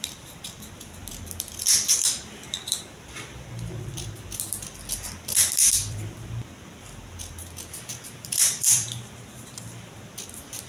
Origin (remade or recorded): remade